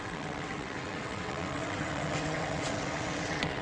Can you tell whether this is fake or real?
fake